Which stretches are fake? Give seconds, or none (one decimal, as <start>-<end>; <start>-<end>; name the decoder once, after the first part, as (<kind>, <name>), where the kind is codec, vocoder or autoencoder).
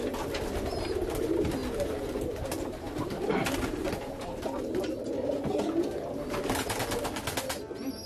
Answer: 1.6-4.8 (vocoder, BigVGAN v2)